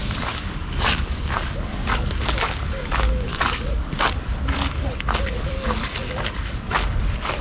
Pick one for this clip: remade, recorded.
remade